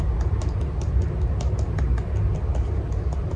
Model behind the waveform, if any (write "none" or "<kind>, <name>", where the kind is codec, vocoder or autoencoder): none